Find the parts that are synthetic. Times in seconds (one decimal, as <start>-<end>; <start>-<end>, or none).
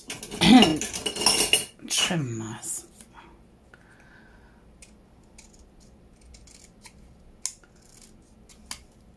none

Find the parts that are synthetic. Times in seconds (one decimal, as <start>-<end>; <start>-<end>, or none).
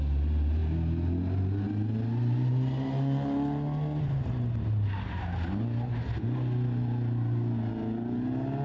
none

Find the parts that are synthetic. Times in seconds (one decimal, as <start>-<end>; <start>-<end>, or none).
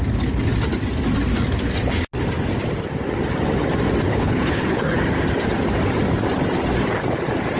4.1-5.0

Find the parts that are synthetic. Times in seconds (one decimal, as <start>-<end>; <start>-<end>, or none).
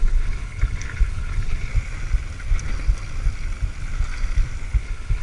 0.0-1.7; 4.8-5.2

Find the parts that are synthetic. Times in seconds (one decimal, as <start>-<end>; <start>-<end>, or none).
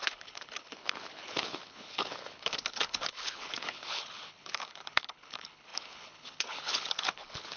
0.0-7.6